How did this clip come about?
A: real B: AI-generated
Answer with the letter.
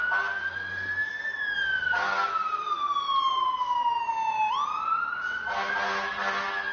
A